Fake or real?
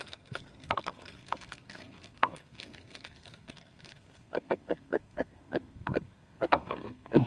fake